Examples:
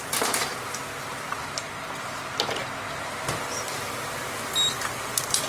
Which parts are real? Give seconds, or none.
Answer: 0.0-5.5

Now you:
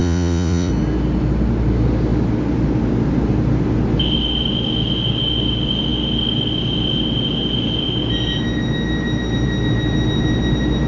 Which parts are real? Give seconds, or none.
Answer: 0.7-10.9

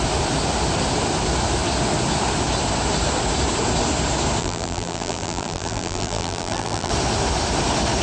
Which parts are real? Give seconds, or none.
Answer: 0.0-4.4; 6.9-8.0

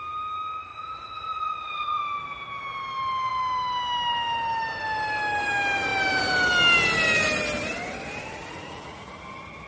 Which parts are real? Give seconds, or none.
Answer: 0.0-0.7; 2.0-8.3; 9.2-9.7

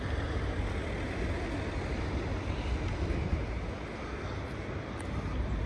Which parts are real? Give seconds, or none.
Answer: 0.0-5.7

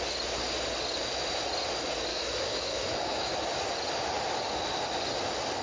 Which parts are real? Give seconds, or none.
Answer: 0.0-2.1; 3.3-5.6

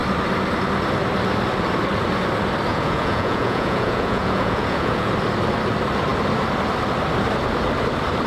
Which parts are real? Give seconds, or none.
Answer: 0.0-2.7; 5.1-8.3